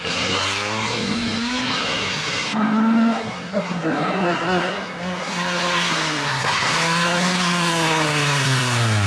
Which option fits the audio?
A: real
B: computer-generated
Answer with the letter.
B